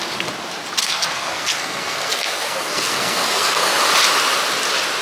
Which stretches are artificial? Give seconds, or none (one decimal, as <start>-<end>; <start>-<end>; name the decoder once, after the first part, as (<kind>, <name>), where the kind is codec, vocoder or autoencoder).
0.8-3.8 (codec, SNAC)